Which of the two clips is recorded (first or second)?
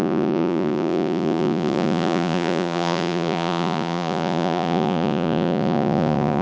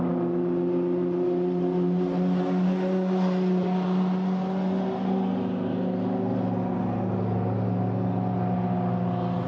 second